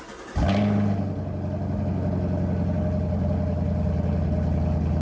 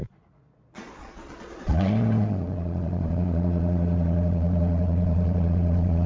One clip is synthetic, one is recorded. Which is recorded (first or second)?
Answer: first